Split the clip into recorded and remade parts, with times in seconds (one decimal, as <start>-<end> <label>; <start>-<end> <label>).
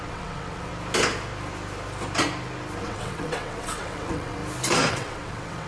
0.0-0.7 remade; 0.7-2.8 recorded; 2.8-4.4 remade; 4.4-4.9 recorded; 4.9-5.7 remade